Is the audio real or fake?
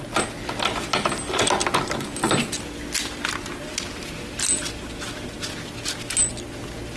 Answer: real